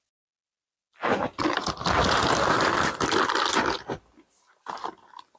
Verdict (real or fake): real